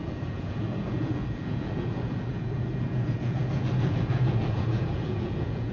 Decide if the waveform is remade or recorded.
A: remade